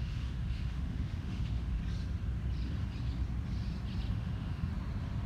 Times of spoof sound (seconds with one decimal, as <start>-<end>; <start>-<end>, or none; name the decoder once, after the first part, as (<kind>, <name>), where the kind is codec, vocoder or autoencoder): 0.0-1.8 (autoencoder, DAC-VAE); 4.1-4.7